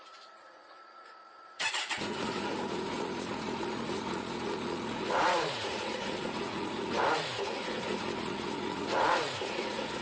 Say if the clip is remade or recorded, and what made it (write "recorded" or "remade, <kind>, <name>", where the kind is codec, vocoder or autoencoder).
remade, vocoder, Vocos